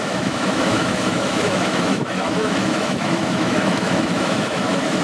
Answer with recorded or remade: remade